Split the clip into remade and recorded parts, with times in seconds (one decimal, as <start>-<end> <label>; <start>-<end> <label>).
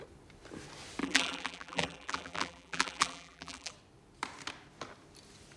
0.0-1.0 recorded; 1.0-3.7 remade; 3.7-5.6 recorded